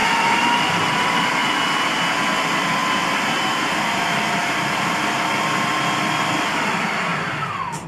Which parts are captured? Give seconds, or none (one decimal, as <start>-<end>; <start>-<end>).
0.0-0.6; 1.4-2.4